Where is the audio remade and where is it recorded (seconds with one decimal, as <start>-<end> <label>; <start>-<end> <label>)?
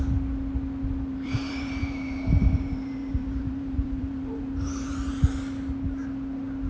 0.0-1.1 recorded; 1.1-5.1 remade; 5.1-6.7 recorded